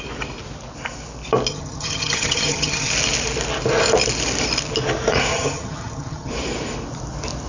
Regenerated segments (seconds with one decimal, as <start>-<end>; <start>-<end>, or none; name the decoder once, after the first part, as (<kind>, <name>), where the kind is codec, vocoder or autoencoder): 1.5-2.9 (vocoder, HiFi-GAN); 5.3-6.3